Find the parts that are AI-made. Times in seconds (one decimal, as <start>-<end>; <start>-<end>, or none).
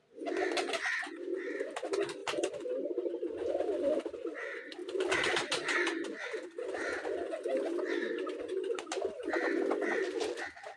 4.8-6.4